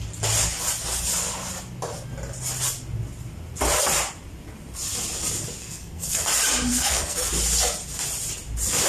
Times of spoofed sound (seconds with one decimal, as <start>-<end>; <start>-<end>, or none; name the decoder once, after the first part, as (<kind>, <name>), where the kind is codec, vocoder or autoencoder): 5.6-6.3 (codec, SNAC); 6.7-7.3